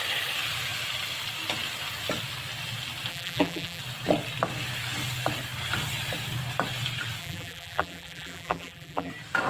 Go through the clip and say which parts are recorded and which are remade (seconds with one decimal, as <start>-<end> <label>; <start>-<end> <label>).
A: 0.0-3.1 recorded; 3.1-3.8 remade; 3.8-7.2 recorded; 7.2-9.1 remade; 9.1-9.5 recorded